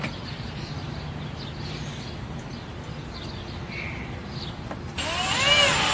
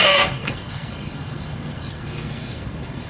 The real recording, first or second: first